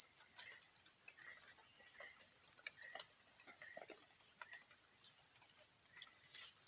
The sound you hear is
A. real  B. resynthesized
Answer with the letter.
A